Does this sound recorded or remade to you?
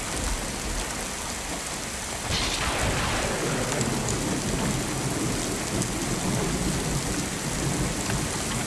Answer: recorded